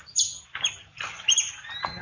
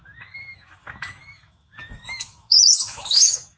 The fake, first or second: second